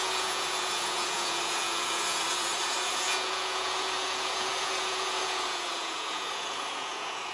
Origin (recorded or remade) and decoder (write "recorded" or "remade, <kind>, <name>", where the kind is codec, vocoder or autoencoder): remade, vocoder, Vocos